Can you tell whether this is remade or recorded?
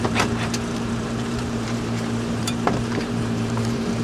remade